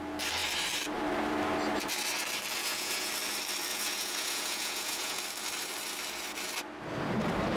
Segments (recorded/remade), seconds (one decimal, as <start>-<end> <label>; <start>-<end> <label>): 0.0-2.6 recorded; 2.6-3.1 remade; 3.1-3.7 recorded; 3.7-5.2 remade; 5.2-7.6 recorded